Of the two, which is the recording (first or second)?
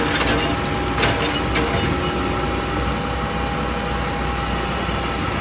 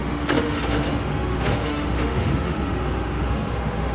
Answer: first